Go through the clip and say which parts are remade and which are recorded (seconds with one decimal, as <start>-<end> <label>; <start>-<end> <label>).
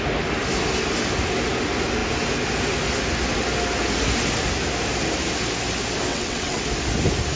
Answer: 0.0-6.1 recorded; 6.1-6.6 remade; 6.6-7.4 recorded